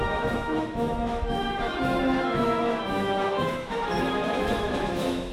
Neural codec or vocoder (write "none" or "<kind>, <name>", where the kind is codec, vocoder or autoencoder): autoencoder, DAC-VAE